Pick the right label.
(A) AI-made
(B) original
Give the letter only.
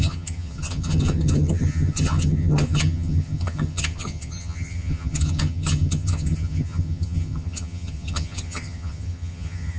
A